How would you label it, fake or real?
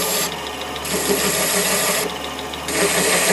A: real